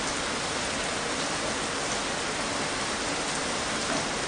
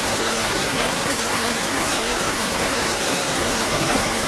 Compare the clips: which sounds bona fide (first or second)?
first